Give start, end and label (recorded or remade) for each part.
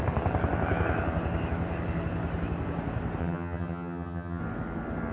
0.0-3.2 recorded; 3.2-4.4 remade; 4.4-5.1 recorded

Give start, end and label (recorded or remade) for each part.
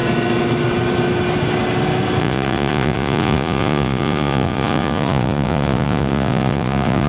0.0-2.2 recorded; 2.2-7.1 remade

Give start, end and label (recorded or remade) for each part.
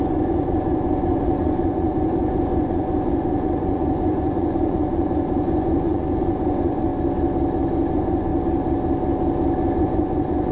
0.0-6.9 remade; 6.9-7.9 recorded; 7.9-8.3 remade; 8.3-9.8 recorded; 9.8-10.5 remade